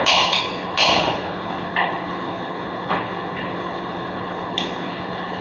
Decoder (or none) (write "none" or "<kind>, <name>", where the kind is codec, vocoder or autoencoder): codec, HILCodec